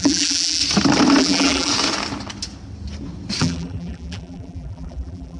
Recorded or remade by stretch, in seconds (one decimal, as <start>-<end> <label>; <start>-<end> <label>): 0.0-0.6 remade; 0.6-1.2 recorded; 1.2-1.7 remade; 1.7-3.4 recorded; 3.4-5.4 remade